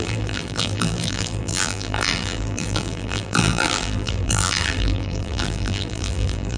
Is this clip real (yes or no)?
no